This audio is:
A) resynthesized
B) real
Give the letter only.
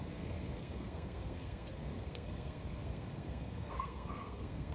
A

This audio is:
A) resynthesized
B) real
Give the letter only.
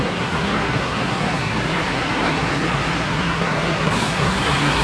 A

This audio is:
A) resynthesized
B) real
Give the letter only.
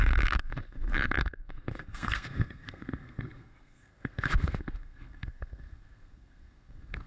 A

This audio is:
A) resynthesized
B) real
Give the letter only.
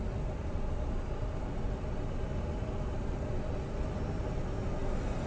B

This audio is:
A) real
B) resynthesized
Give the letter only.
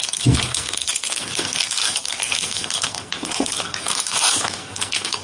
B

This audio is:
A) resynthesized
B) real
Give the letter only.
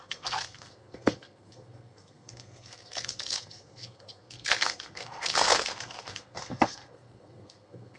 A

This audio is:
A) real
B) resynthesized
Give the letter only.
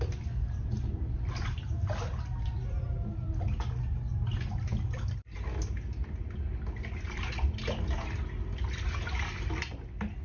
A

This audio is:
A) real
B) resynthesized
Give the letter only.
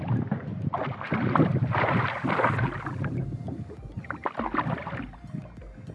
A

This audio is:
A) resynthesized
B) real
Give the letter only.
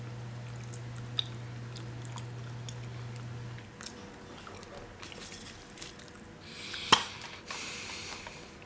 B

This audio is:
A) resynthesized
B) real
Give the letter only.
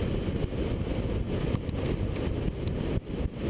B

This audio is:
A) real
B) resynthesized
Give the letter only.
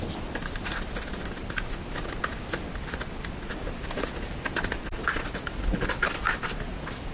A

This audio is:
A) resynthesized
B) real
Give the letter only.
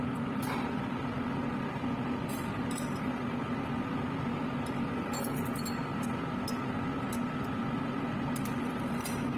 B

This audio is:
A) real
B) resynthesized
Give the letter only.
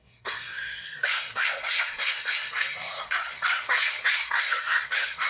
B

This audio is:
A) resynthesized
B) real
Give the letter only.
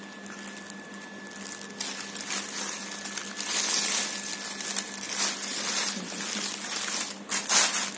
B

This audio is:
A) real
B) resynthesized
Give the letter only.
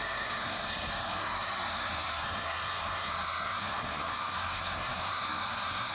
B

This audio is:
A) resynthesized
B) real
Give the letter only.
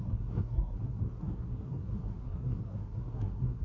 A